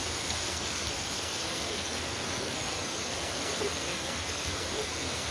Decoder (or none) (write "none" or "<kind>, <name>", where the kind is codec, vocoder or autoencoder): codec, SNAC